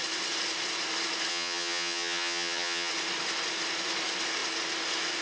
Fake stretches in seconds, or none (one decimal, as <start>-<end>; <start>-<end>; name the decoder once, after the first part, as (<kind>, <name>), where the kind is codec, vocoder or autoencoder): 1.3-2.9 (vocoder, HiFi-GAN)